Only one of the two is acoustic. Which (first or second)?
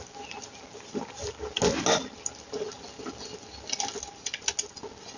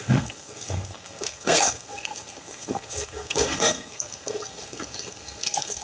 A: first